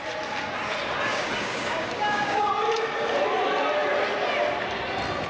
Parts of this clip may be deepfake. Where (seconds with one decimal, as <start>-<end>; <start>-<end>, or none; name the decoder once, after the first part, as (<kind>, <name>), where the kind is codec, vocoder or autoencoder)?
1.1-2.5 (codec, DAC)